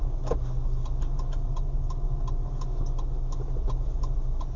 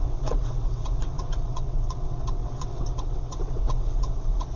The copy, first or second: second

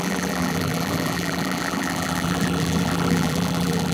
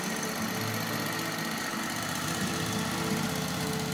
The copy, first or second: first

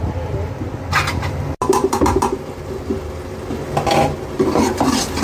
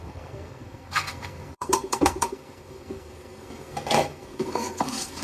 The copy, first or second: second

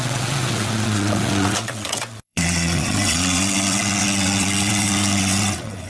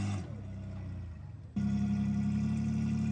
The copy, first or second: first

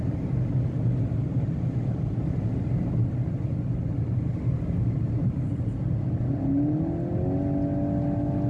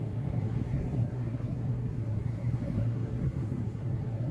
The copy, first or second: second